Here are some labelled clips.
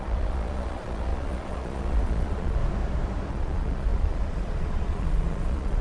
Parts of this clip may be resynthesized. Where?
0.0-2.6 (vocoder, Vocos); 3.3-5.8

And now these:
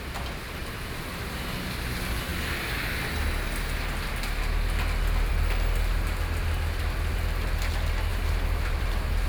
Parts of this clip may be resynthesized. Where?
0.6-1.5 (vocoder, BigVGAN v2); 8.1-9.3

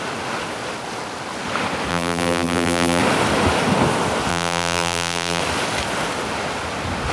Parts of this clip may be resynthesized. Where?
1.9-3.0 (vocoder, BigVGAN v2); 4.3-5.4

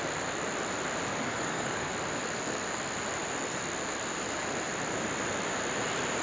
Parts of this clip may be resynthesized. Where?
1.1-1.9 (codec, DAC)

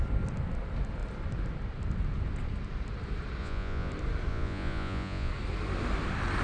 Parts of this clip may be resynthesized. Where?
3.4-3.9 (vocoder, Vocos); 4.3-5.3